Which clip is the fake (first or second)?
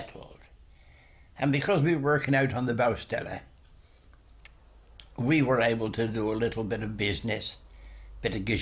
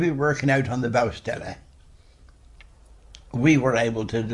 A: second